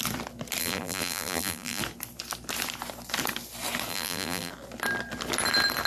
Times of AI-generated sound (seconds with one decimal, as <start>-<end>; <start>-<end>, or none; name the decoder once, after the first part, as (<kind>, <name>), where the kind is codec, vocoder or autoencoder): 0.6-1.8 (vocoder, BigVGAN v2); 3.9-4.5